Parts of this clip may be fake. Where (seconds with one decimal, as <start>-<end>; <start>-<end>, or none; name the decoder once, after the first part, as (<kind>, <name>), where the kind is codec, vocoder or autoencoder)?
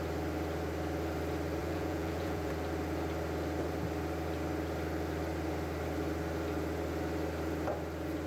1.6-2.5 (vocoder, Vocos)